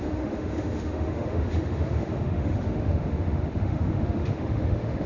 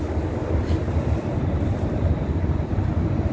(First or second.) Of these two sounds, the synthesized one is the first